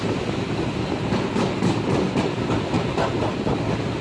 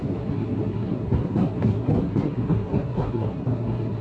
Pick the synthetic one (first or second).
second